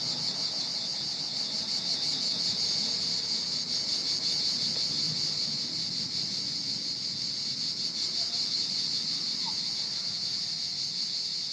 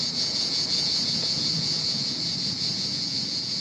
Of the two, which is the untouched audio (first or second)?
first